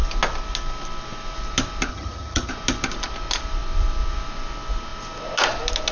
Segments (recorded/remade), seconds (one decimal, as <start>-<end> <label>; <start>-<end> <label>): 0.0-1.9 recorded; 1.9-2.5 remade; 2.5-5.9 recorded